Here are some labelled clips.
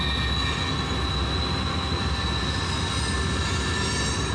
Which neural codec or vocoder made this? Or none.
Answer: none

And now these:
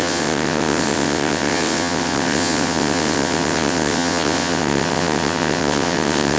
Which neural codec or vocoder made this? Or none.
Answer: vocoder, WaveNeXt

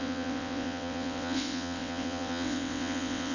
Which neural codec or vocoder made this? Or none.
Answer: vocoder, WaveNeXt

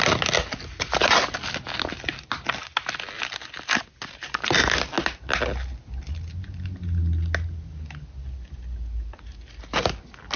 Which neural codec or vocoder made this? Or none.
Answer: none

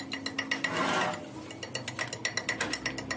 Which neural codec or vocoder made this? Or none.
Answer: none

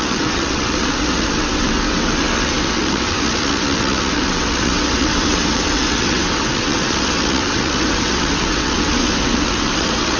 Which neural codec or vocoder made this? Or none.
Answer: vocoder, WaveNeXt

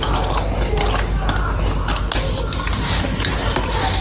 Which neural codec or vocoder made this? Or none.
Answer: none